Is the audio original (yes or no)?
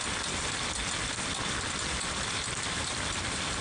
yes